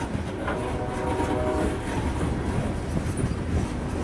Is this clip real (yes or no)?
yes